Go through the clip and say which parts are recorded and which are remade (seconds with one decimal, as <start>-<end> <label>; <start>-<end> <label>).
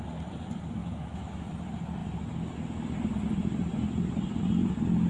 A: 0.0-0.8 recorded; 0.8-1.5 remade; 1.5-5.1 recorded